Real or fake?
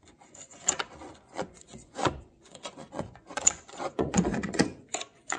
fake